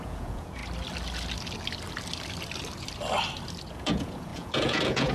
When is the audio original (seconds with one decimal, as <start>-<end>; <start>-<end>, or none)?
0.6-3.7